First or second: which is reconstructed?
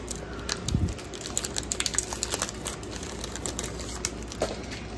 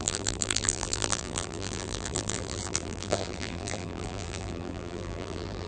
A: second